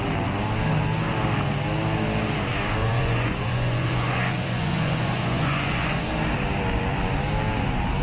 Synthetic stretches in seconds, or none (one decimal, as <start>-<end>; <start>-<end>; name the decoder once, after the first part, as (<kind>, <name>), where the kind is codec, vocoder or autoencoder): 2.8-6.1 (vocoder, Vocos)